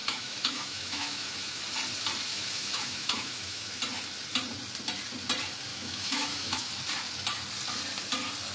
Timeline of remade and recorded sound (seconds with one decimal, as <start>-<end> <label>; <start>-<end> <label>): 0.0-1.6 remade; 1.6-2.3 recorded; 2.3-3.8 remade; 3.8-5.7 recorded; 5.7-6.7 remade; 6.7-8.5 recorded